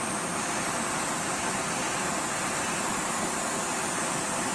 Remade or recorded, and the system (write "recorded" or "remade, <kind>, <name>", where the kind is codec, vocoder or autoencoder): recorded